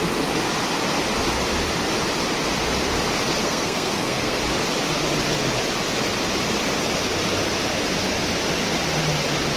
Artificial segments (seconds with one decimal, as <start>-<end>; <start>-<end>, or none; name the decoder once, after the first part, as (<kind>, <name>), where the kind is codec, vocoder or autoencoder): 3.4-4.4 (codec, SNAC)